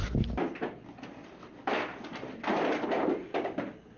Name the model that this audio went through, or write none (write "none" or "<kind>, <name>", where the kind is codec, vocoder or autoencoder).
none